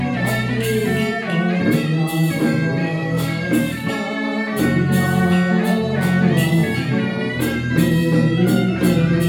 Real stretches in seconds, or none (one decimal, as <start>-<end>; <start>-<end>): 0.0-2.8; 3.9-9.3